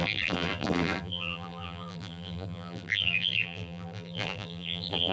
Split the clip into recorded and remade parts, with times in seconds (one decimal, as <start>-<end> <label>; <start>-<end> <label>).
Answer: 0.0-5.1 remade

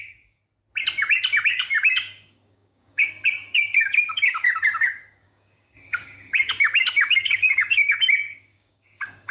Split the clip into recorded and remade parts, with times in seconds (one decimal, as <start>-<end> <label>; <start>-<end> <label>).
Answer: 0.0-0.4 remade; 0.4-1.4 recorded; 1.4-9.3 remade

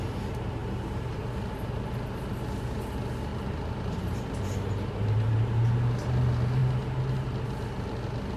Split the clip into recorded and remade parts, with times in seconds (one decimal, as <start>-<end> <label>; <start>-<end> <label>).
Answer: 0.0-3.3 recorded; 3.3-4.5 remade; 4.5-8.4 recorded

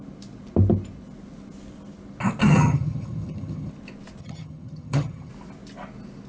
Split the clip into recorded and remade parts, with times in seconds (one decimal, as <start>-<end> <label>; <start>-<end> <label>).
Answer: 0.0-2.4 recorded; 2.4-3.7 remade; 3.7-4.2 recorded; 4.2-5.3 remade; 5.3-6.3 recorded

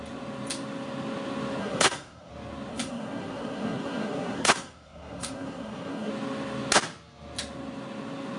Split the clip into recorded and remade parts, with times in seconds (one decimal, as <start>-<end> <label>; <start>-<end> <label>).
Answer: 0.0-1.6 recorded; 1.6-2.3 remade; 2.3-2.7 recorded; 2.7-6.1 remade; 6.1-8.4 recorded

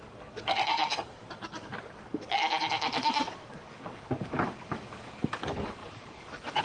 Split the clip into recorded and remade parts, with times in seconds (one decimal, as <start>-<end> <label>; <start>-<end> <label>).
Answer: 0.0-6.6 remade